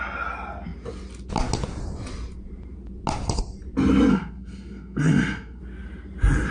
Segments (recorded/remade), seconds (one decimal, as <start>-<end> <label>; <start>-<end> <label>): 0.0-4.1 recorded; 4.1-5.6 remade; 5.6-6.5 recorded